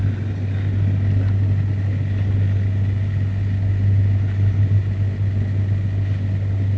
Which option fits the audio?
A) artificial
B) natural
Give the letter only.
B